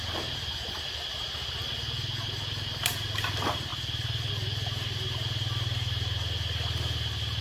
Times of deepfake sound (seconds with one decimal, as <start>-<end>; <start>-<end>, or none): none